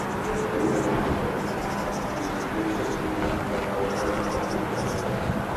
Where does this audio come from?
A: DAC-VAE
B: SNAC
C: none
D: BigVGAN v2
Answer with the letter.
C